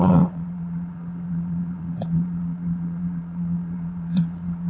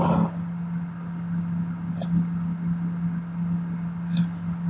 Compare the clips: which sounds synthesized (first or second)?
first